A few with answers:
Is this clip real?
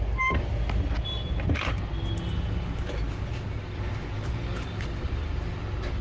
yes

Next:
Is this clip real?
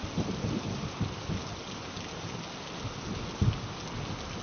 yes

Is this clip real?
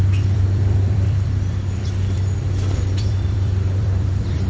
no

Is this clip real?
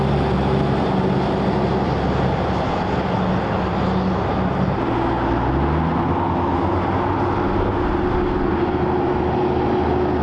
yes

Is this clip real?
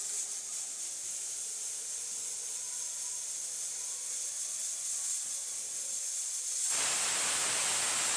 yes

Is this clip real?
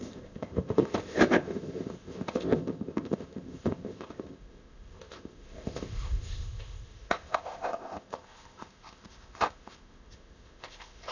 no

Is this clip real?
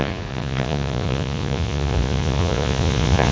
no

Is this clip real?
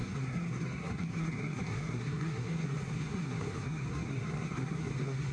no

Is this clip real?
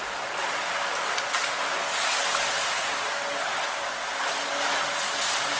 yes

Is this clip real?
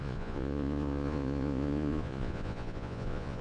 no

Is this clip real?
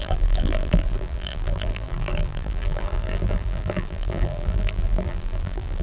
no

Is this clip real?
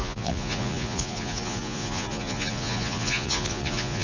no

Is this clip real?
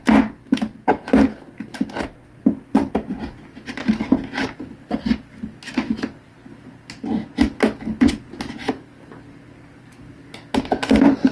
yes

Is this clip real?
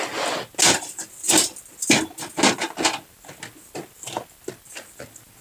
yes